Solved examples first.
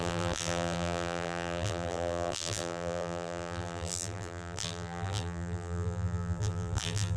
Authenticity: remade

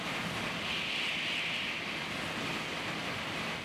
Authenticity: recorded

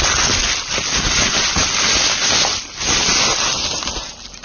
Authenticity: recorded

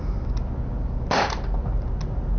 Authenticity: recorded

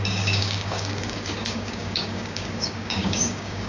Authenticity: remade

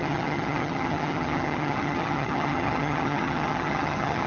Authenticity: remade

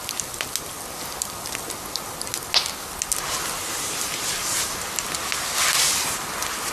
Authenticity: recorded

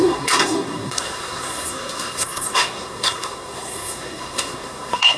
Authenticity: remade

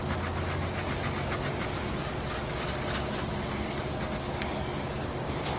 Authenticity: recorded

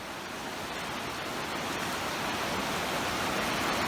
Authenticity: recorded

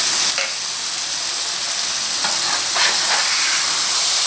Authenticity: recorded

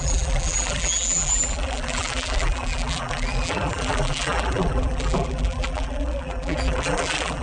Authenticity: remade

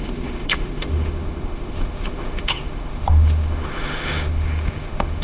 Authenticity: remade